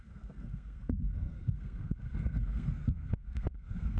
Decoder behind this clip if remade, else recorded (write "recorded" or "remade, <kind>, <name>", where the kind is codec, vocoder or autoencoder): remade, codec, SNAC